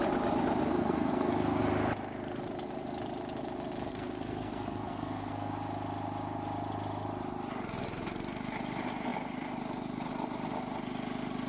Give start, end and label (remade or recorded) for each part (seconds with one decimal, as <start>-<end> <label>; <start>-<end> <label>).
0.0-0.8 recorded; 0.8-1.6 remade; 1.6-3.8 recorded; 3.8-5.5 remade; 5.5-11.5 recorded